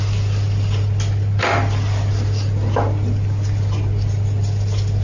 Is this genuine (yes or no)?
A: yes